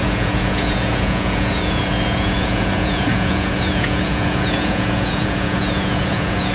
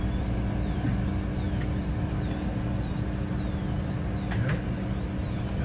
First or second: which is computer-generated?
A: first